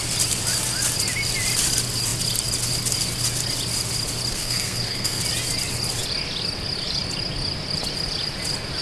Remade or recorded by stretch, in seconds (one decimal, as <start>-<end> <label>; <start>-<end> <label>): 0.0-4.3 recorded; 4.3-5.2 remade; 5.2-8.8 recorded